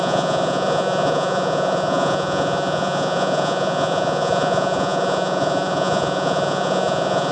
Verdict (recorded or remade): remade